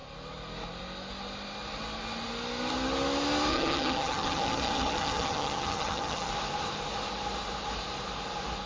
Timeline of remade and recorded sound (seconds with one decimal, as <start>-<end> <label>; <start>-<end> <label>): 0.0-3.5 recorded; 3.5-6.3 remade; 6.3-8.7 recorded